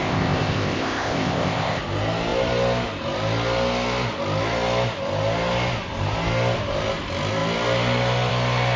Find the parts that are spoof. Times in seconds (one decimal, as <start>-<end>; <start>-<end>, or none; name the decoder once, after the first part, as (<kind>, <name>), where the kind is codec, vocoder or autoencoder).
0.0-1.8 (codec, ZipCodec)